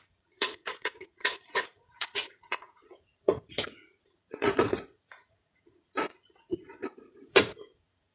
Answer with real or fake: fake